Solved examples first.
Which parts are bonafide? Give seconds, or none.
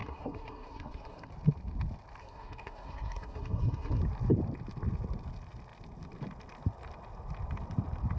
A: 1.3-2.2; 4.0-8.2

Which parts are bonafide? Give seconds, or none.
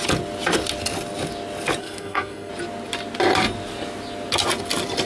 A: 0.0-1.8; 2.5-5.1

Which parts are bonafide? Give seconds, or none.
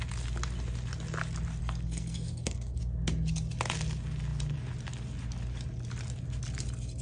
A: 0.0-1.6; 2.8-7.0